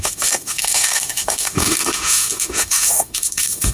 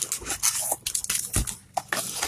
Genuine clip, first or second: second